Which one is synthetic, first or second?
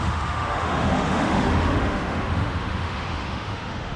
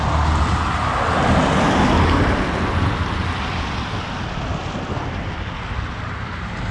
first